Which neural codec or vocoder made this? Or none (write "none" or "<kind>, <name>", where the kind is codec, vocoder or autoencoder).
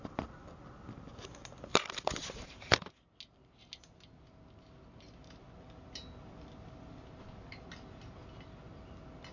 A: none